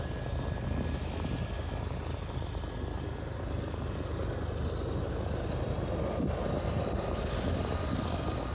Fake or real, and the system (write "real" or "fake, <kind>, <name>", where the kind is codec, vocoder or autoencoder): real